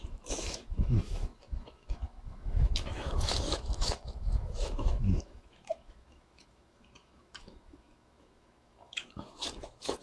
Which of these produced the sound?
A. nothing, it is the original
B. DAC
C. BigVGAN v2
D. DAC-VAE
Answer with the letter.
D